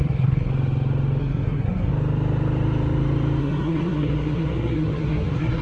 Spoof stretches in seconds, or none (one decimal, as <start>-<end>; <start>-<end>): 0.0-0.5; 1.2-1.9; 3.4-5.6